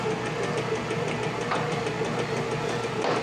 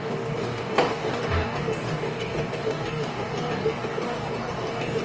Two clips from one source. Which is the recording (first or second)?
first